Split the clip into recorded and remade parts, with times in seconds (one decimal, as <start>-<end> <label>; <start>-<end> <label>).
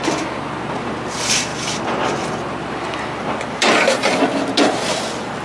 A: 0.0-5.4 recorded